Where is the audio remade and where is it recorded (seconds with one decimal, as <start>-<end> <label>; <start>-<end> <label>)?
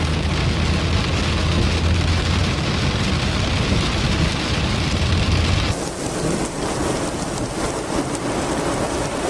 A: 0.0-9.3 recorded